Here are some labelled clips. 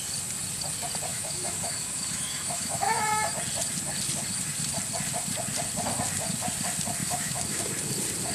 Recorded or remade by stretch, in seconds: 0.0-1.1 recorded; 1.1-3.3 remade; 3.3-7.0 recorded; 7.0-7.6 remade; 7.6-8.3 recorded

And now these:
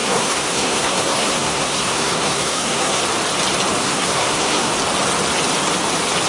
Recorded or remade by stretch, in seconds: 0.0-3.0 remade; 3.0-3.8 recorded; 3.8-4.7 remade; 4.7-6.3 recorded

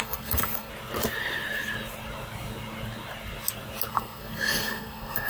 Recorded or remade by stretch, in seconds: 0.0-0.7 remade; 0.7-3.9 recorded; 3.9-5.3 remade

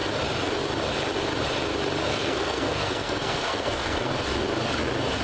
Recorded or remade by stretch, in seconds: 0.0-2.1 recorded; 2.1-4.1 remade; 4.1-5.2 recorded

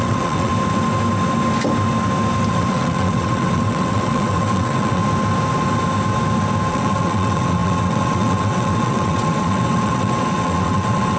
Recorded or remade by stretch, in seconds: 0.0-0.5 remade; 0.5-2.5 recorded; 2.5-5.0 remade; 5.0-6.7 recorded; 6.7-11.2 remade

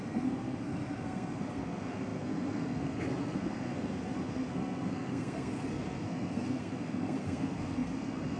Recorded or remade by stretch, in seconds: 0.0-8.4 remade